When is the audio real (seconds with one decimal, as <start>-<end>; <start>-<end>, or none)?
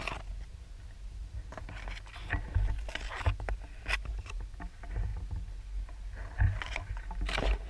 0.0-7.7